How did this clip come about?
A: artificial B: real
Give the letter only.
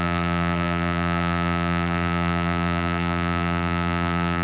A